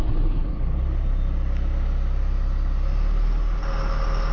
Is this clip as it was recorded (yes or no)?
yes